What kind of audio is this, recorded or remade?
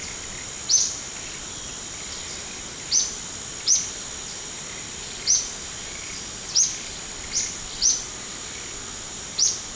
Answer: recorded